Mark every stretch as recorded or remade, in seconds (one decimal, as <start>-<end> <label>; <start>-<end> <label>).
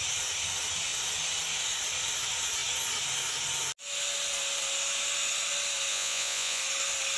0.0-5.9 recorded; 5.9-6.6 remade; 6.6-7.2 recorded